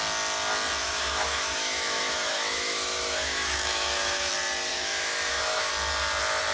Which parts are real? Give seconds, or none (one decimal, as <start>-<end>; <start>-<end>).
0.0-0.8; 4.3-4.7; 5.7-6.5